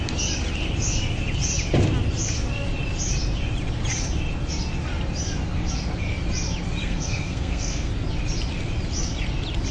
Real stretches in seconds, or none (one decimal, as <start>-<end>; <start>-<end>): 0.0-6.8; 7.9-9.7